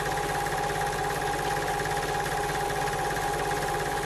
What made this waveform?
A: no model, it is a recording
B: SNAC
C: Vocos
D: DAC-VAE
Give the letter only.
A